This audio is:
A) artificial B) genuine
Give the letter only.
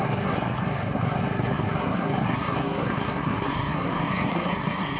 A